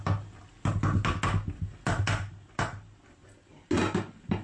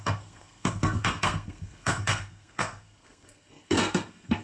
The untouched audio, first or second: first